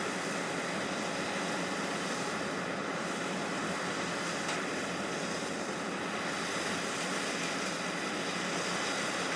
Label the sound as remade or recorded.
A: recorded